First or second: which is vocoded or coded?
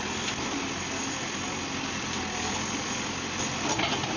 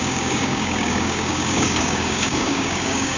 second